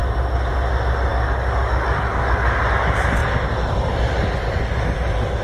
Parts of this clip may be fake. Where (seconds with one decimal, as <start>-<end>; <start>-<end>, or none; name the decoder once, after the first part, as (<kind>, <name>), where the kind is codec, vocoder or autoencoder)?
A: 1.1-2.6 (codec, DAC)